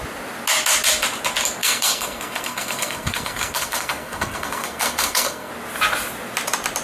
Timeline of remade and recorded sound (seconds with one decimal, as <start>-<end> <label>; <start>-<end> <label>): 0.0-1.6 recorded; 1.6-5.5 remade; 5.5-6.8 recorded